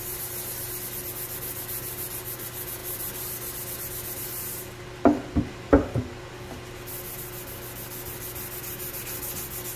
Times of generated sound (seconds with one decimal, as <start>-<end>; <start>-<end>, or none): none